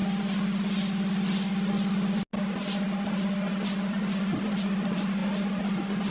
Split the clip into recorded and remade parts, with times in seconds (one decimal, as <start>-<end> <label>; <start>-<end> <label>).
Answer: 0.0-6.1 recorded